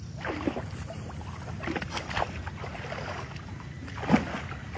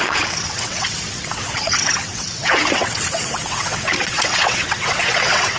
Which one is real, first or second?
first